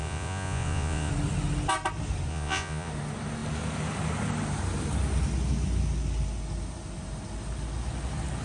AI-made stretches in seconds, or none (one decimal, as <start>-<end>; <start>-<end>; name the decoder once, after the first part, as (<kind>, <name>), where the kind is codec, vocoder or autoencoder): 0.0-1.1 (vocoder, Vocos); 2.3-2.9